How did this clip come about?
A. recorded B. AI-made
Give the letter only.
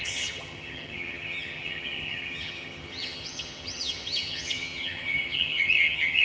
B